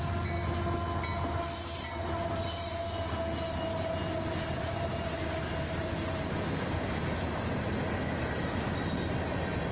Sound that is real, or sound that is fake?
real